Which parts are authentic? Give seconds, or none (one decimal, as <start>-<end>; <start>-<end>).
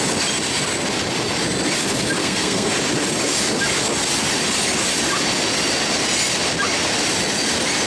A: 0.0-2.2; 2.7-7.9